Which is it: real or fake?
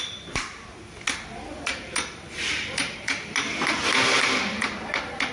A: fake